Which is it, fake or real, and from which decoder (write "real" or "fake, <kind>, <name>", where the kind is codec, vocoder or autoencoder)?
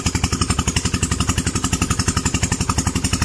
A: real